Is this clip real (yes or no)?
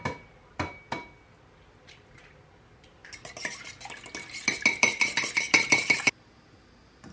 yes